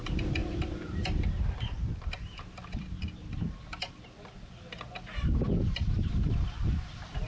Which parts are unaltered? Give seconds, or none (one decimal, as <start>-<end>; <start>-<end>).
0.0-7.3